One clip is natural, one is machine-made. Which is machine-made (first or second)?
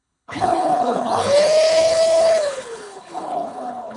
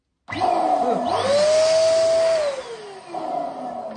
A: first